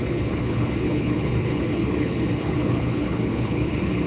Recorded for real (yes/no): no